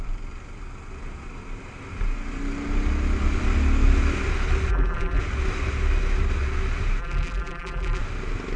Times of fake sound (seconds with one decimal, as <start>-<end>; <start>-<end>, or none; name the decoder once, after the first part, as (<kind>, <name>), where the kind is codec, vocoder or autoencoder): 4.7-5.2 (vocoder, BigVGAN v2); 7.0-8.0